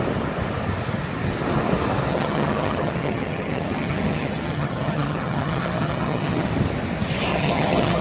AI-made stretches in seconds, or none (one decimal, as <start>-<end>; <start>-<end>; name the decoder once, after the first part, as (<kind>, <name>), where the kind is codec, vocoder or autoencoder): 2.1-6.5 (vocoder, HiFi-GAN); 7.3-8.0